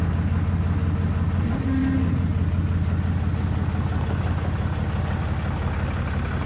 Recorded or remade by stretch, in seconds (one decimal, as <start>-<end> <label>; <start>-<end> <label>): 0.0-6.5 recorded